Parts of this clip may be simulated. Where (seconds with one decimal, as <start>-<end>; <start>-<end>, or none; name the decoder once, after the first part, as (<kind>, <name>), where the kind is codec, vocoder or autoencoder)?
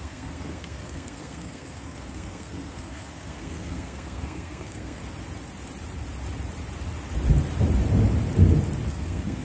0.0-5.0 (codec, SNAC); 8.9-9.4